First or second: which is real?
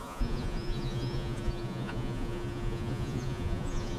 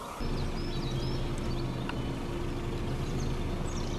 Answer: second